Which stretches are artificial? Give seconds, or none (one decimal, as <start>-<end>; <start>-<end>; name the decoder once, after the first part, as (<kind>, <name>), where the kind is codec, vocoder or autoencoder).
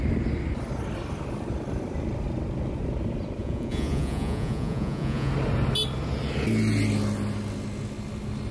3.4-5.3 (vocoder, Vocos)